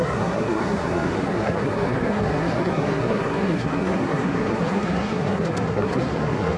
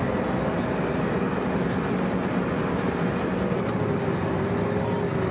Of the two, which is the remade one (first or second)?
first